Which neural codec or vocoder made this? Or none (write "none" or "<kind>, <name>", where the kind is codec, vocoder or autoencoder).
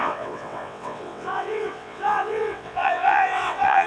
vocoder, WaveNeXt